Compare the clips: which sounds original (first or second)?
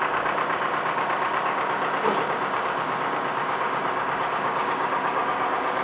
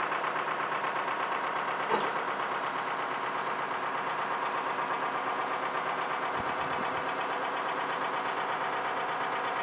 second